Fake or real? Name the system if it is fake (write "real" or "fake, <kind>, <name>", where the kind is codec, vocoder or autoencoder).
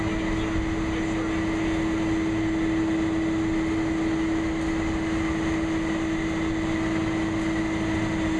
real